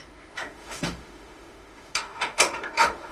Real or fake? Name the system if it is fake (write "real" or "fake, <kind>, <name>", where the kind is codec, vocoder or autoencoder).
fake, autoencoder, DAC-VAE